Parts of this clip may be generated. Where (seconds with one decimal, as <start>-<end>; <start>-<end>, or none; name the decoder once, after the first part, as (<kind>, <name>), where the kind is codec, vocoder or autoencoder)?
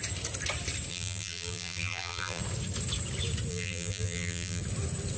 0.9-2.4 (vocoder, BigVGAN v2); 3.5-4.6